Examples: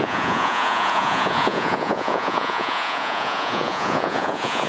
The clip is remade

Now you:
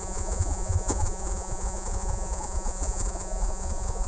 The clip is remade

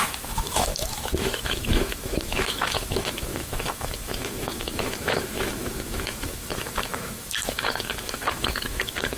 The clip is remade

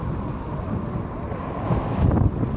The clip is recorded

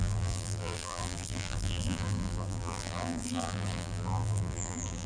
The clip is remade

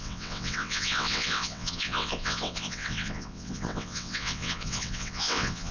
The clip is remade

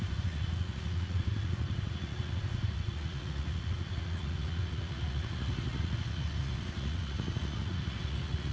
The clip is remade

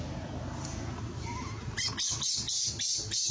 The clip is recorded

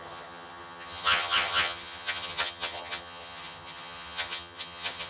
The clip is remade